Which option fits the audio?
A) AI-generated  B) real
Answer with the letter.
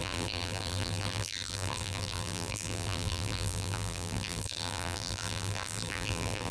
A